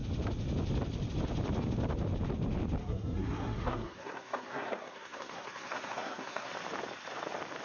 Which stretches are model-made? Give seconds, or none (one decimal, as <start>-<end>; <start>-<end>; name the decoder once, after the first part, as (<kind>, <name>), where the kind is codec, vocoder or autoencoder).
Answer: 2.8-6.5 (codec, SNAC)